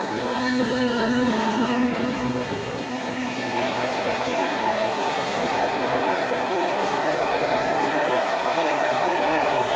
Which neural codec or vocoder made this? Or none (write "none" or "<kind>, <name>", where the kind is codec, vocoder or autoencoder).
codec, SNAC